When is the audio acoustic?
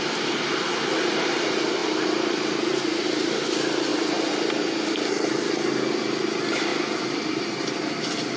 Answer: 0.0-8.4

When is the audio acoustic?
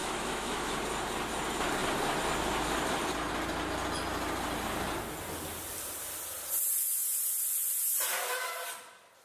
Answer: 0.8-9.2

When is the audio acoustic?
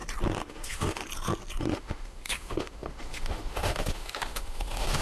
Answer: 0.0-0.5; 1.0-1.6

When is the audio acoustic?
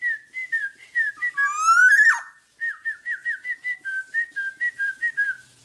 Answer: 0.0-5.6